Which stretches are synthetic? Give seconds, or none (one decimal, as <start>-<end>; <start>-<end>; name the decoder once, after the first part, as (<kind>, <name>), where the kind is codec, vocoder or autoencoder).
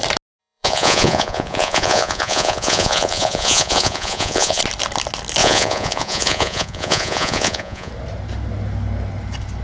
0.4-4.6 (vocoder, Vocos); 5.4-7.9